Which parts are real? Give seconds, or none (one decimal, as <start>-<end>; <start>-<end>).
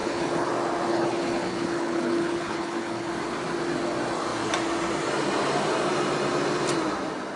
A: 0.5-0.9; 3.1-7.4